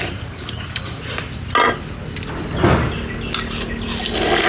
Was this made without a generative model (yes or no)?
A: yes